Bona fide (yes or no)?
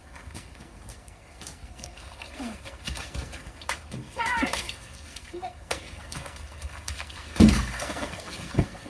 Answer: no